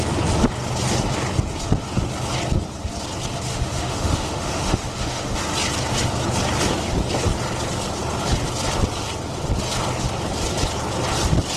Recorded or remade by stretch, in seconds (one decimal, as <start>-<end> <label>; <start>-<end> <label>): 0.0-3.5 recorded; 3.5-5.4 remade; 5.4-11.6 recorded